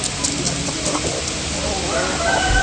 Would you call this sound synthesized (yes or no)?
no